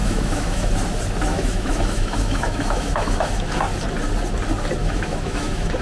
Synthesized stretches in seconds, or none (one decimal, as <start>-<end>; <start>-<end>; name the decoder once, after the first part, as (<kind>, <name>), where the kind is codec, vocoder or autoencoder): 0.0-0.7 (autoencoder, DAC-VAE); 1.3-3.6; 4.8-5.8